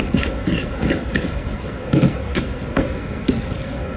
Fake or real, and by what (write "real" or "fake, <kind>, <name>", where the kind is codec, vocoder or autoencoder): fake, codec, SNAC